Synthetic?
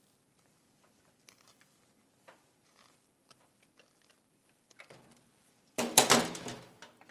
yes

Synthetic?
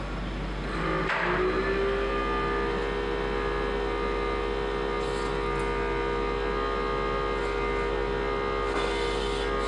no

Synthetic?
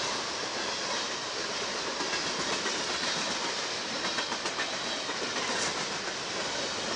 no